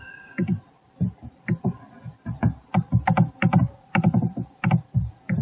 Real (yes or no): yes